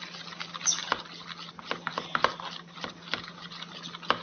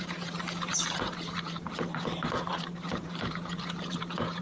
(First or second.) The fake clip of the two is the second